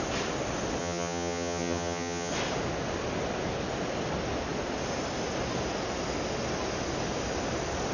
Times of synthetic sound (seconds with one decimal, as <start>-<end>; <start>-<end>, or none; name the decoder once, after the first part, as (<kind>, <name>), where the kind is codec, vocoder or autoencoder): 0.8-2.3 (vocoder, HiFi-GAN)